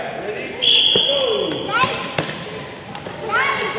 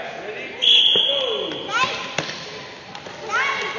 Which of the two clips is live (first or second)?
second